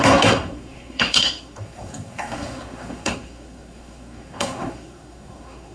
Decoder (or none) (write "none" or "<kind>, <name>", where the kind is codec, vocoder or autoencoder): codec, SNAC